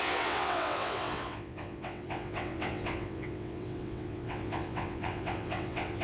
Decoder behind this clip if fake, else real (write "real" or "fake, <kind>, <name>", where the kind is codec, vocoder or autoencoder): fake, vocoder, WaveNeXt